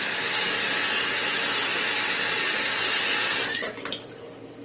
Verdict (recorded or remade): recorded